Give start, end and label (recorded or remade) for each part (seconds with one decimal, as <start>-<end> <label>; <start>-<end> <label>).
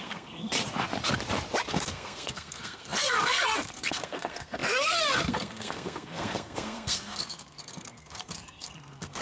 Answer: 0.0-0.5 remade; 0.5-1.7 recorded; 1.7-9.2 remade